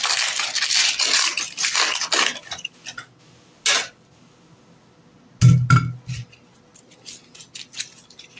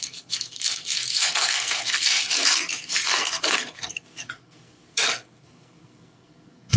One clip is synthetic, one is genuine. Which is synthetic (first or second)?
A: second